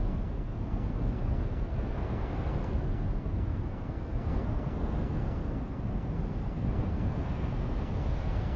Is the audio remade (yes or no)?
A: yes